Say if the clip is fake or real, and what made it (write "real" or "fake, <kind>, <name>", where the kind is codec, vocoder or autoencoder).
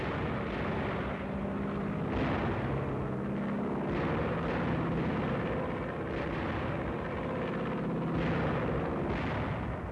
real